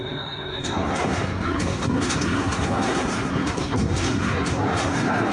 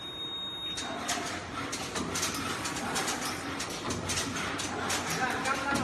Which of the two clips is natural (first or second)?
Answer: second